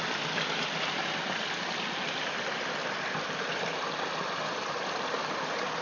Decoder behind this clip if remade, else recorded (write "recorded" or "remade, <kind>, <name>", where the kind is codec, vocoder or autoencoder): recorded